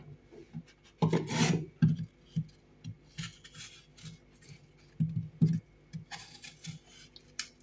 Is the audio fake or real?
real